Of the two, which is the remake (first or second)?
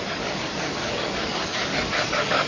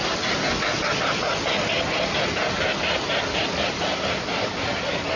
first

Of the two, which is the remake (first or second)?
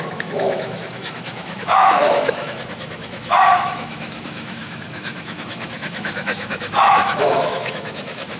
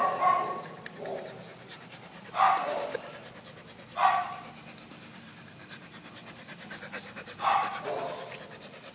first